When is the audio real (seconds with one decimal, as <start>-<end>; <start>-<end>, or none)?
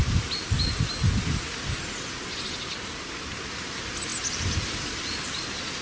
0.0-5.8